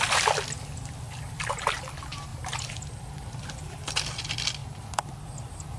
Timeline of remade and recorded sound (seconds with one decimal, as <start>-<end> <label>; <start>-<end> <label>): 0.0-2.3 recorded; 2.3-3.4 remade; 3.4-4.6 recorded; 4.6-5.8 remade